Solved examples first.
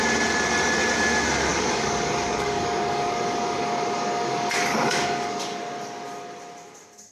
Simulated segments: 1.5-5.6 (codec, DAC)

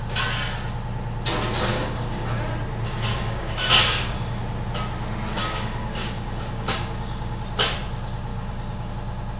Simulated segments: 1.7-2.4 (codec, DAC); 3.1-4.4; 5.4-7.4; 8.3-8.9

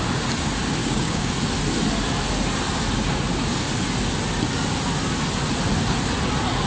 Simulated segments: 0.8-1.3 (codec, DAC)

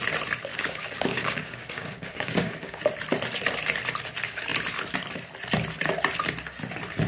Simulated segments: 0.5-2.8 (codec, DAC)

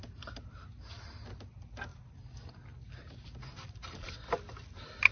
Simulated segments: none

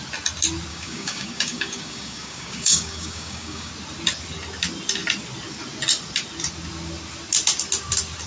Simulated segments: 0.7-3.7 (codec, DAC)